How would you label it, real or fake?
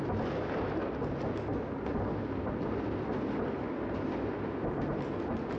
real